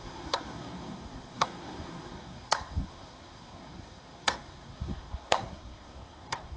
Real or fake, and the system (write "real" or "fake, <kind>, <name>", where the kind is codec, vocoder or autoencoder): fake, codec, SNAC